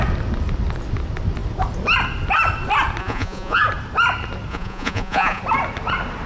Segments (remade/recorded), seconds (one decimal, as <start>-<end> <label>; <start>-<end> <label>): 0.0-3.0 recorded; 3.0-3.6 remade; 3.6-4.5 recorded; 4.5-5.4 remade; 5.4-6.3 recorded